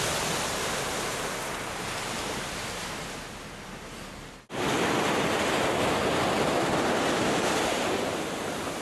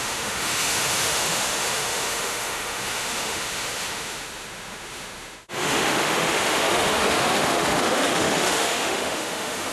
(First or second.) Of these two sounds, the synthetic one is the second